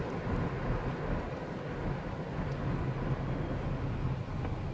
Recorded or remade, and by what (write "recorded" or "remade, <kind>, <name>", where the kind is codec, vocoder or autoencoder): recorded